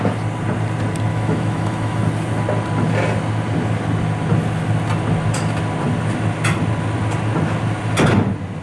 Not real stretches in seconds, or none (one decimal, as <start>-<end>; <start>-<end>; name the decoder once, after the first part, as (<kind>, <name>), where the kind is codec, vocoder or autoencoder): 1.1-2.0 (autoencoder, DAC-VAE)